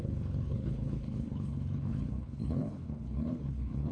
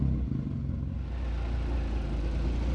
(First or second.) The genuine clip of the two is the second